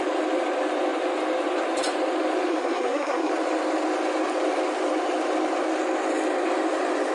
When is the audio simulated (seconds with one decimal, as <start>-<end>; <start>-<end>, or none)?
2.5-3.3